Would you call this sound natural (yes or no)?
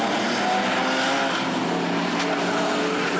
yes